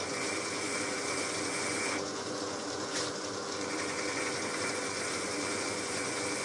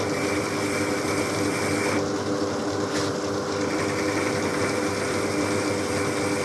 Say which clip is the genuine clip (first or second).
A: second